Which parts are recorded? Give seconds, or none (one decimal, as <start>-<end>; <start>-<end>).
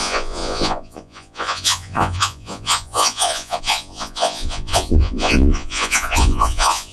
none